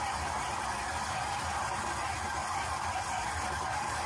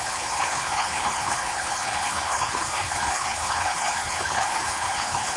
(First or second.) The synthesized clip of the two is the second